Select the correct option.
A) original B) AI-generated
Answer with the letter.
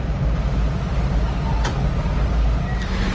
A